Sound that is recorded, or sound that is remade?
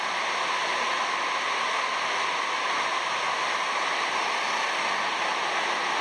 recorded